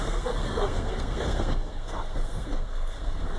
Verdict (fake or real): fake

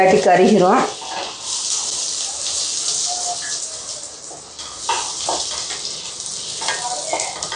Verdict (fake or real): real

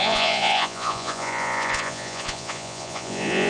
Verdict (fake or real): fake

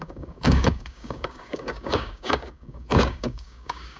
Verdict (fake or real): fake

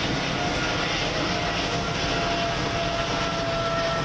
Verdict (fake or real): real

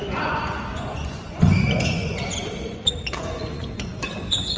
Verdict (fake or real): fake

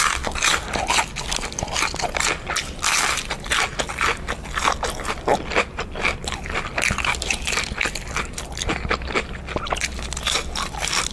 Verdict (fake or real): real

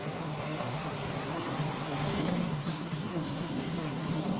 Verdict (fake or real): fake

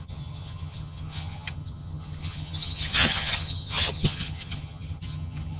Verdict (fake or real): fake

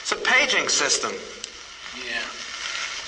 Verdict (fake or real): real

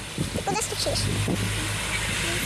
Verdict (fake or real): real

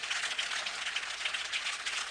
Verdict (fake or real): fake